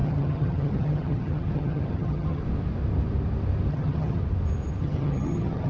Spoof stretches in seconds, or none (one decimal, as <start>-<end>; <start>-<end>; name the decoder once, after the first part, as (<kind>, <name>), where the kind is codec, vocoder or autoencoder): 0.0-2.4 (vocoder, HiFi-GAN); 3.7-4.2; 4.8-5.7